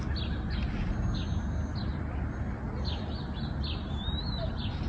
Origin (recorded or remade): recorded